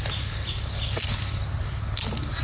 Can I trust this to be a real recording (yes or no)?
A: yes